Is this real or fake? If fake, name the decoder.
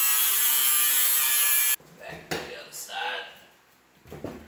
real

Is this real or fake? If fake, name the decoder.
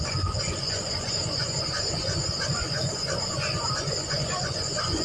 fake, vocoder, Vocos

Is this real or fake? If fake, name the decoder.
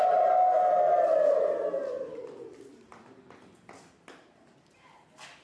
real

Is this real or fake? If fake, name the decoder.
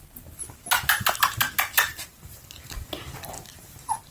real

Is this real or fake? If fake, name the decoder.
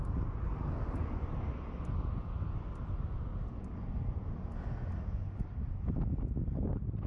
real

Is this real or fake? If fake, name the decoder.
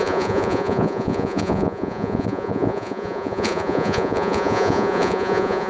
fake, vocoder, Vocos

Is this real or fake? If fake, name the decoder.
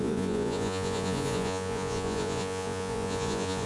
fake, vocoder, Vocos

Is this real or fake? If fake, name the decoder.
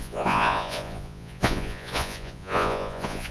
fake, vocoder, Vocos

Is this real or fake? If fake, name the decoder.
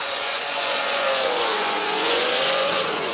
fake, vocoder, Vocos